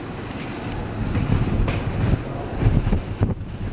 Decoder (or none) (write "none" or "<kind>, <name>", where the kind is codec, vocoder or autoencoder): none